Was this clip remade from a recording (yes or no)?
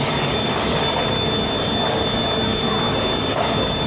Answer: yes